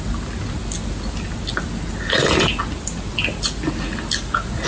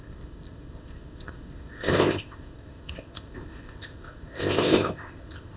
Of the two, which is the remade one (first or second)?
second